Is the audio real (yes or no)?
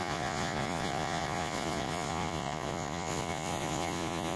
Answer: no